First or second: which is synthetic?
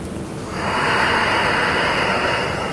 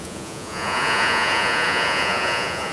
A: second